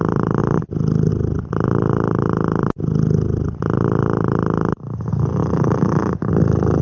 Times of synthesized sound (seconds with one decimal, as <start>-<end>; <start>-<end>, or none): none